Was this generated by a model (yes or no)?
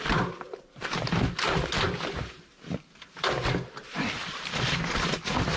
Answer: yes